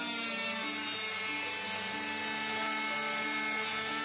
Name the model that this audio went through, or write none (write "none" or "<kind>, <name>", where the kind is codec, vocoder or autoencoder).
none